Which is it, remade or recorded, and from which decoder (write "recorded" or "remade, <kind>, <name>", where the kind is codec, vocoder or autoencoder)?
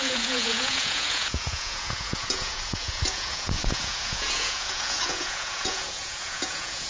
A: remade, vocoder, Vocos